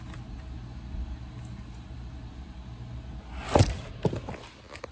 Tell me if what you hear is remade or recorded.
recorded